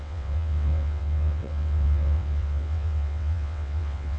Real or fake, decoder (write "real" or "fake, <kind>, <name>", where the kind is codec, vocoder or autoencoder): fake, vocoder, WaveNeXt